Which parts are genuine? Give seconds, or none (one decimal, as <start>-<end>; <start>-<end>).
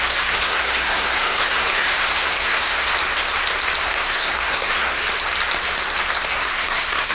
2.9-3.8; 5.0-6.3